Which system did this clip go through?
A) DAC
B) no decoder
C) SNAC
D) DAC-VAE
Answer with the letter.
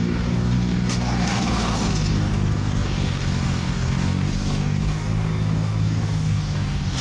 A